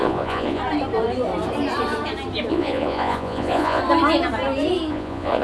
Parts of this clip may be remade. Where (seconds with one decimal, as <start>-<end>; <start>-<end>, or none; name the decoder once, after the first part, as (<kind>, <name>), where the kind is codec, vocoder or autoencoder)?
0.0-0.6 (vocoder, Vocos); 2.5-3.8; 4.9-5.4